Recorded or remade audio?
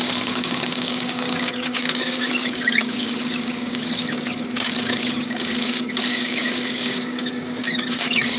remade